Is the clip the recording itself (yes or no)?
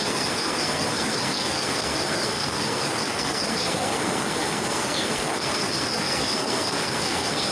no